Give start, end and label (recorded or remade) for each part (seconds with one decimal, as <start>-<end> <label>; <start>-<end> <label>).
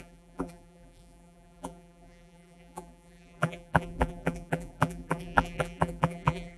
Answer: 0.0-6.6 remade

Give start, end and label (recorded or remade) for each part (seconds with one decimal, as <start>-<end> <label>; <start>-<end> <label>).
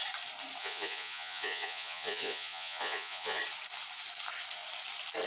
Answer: 0.0-0.6 recorded; 0.6-3.4 remade; 3.4-5.3 recorded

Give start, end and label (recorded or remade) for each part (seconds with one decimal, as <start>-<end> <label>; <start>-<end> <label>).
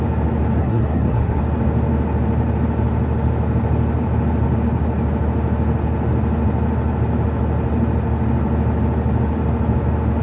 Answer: 0.0-0.6 recorded; 0.6-1.4 remade; 1.4-10.2 recorded